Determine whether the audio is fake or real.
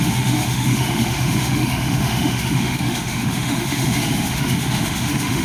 fake